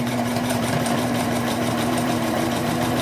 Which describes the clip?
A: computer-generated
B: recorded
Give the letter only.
A